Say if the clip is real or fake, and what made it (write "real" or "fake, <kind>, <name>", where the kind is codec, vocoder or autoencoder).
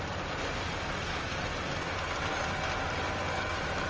real